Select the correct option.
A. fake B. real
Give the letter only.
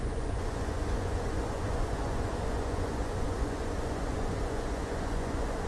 A